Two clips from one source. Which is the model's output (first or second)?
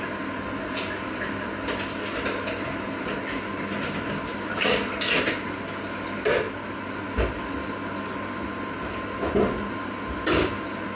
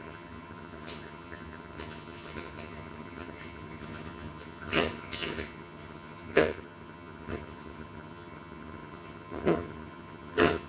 second